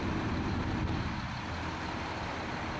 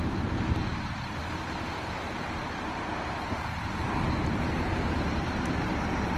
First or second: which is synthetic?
second